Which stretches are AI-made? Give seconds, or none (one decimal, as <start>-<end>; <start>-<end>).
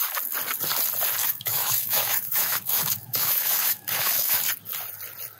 1.2-4.4